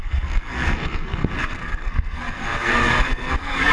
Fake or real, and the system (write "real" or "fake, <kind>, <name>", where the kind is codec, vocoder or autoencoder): fake, codec, SNAC